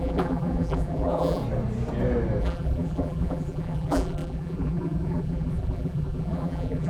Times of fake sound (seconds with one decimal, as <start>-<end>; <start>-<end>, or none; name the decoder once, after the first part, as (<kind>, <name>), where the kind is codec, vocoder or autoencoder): 0.0-1.4 (vocoder, BigVGAN v2); 2.4-6.9